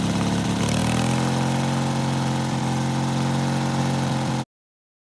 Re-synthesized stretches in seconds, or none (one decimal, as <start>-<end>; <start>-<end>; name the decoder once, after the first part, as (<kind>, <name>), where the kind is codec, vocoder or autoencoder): none